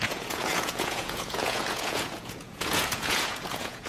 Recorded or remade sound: remade